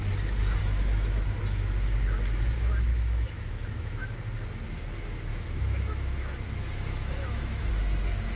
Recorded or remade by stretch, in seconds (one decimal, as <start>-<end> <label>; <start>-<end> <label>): 0.0-0.6 recorded; 0.6-1.4 remade; 1.4-2.9 recorded; 2.9-4.1 remade; 4.1-5.3 recorded; 5.3-7.7 remade; 7.7-8.4 recorded